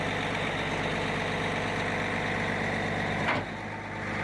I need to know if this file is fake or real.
real